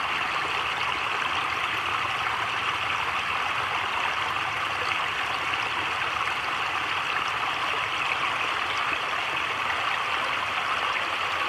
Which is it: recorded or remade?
recorded